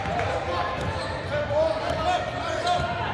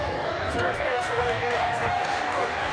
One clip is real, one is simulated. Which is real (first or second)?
first